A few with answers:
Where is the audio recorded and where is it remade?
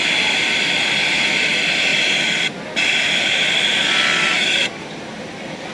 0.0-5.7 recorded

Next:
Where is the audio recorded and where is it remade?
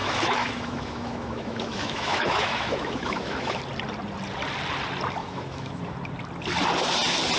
0.0-3.6 remade; 3.6-5.2 recorded; 5.2-5.8 remade; 5.8-7.4 recorded